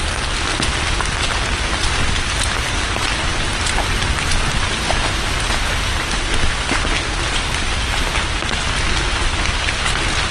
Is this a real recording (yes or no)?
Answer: yes